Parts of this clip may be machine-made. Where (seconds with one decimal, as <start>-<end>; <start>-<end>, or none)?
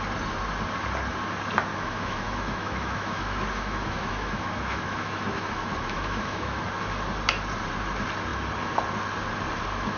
1.7-6.6